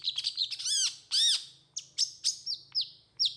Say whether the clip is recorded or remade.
recorded